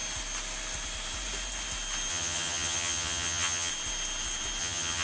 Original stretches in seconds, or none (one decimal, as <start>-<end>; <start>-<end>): 0.0-2.1; 3.7-4.6